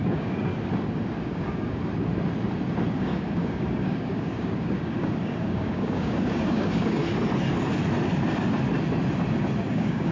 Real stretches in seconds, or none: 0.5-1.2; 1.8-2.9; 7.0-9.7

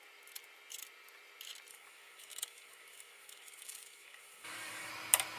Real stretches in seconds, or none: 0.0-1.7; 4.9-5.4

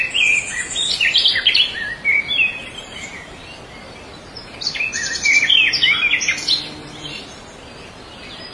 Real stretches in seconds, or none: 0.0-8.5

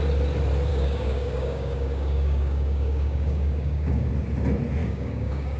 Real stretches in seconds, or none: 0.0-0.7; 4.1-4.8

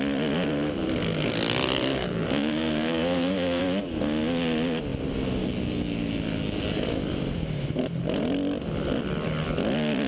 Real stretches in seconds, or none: 0.0-1.9; 3.6-10.1